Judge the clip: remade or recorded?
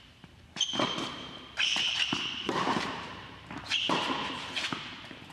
remade